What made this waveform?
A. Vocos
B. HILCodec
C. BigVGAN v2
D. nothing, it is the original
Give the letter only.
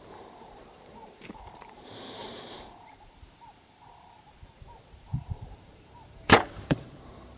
C